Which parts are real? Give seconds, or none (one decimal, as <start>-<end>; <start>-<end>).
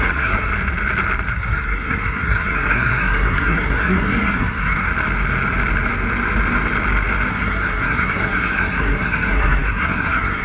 0.5-1.3; 4.9-7.3